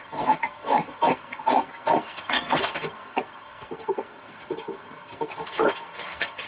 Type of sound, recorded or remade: remade